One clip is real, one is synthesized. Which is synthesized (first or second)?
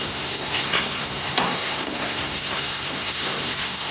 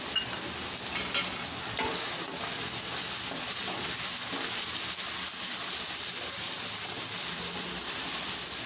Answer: first